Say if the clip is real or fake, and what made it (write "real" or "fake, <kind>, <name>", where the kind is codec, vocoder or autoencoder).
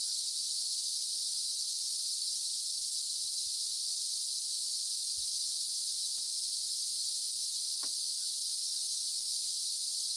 real